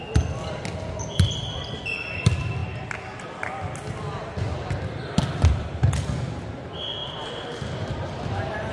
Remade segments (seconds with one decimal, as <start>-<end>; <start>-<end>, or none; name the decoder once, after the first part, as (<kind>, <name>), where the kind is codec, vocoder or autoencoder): 7.0-8.7 (vocoder, BigVGAN v2)